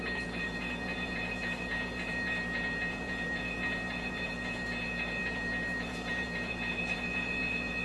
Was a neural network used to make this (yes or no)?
yes